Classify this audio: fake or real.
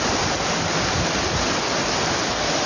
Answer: real